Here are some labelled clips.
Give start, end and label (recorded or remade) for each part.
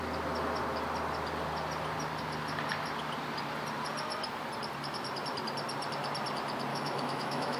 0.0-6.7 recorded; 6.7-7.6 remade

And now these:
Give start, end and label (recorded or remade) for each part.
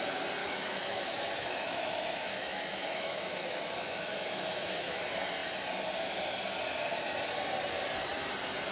0.0-0.4 recorded; 0.4-5.0 remade; 5.0-8.7 recorded